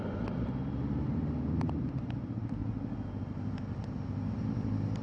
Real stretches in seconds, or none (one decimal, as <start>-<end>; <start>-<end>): 0.0-5.0